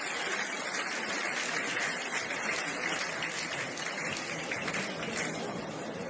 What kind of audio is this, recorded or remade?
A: recorded